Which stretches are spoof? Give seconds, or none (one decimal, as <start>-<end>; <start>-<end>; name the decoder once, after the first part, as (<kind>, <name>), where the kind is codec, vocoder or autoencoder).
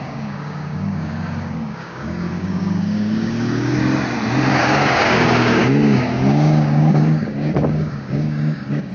0.0-3.8 (codec, DAC); 4.5-8.9